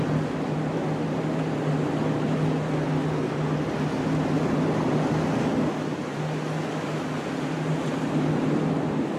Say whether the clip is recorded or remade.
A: recorded